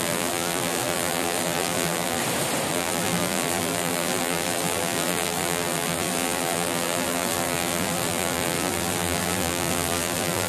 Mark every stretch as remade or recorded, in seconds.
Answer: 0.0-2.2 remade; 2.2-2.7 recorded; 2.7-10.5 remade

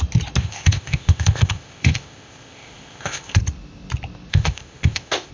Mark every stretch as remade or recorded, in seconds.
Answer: 0.0-0.4 recorded; 0.4-3.4 remade; 3.4-4.3 recorded; 4.3-5.3 remade